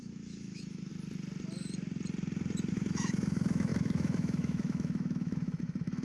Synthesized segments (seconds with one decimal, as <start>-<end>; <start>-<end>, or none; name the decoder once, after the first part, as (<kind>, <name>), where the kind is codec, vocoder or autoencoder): 0.0-0.9 (autoencoder, DAC-VAE); 2.7-6.0